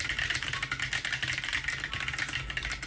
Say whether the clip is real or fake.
real